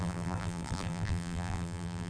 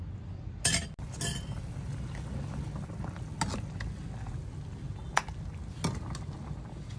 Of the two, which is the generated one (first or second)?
first